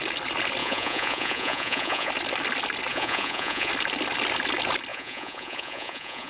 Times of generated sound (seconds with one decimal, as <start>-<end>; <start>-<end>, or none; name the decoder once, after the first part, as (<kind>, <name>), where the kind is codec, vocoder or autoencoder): 0.6-2.1 (vocoder, Vocos); 2.9-3.7; 4.9-6.3